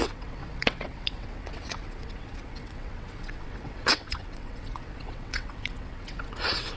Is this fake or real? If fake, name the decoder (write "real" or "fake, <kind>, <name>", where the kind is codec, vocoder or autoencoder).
fake, vocoder, WaveNeXt